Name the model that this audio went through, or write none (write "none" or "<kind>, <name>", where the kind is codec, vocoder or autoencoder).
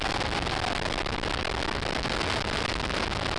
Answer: none